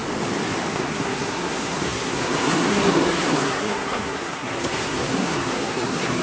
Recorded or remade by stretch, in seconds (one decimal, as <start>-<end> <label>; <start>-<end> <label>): 0.0-0.7 recorded; 0.7-6.2 remade